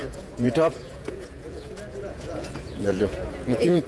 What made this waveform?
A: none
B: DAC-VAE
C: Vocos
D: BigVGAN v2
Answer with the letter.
C